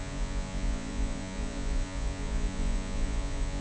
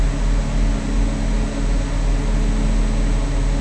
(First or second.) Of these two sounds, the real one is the second